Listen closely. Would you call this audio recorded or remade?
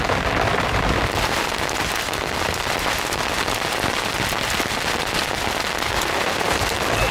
recorded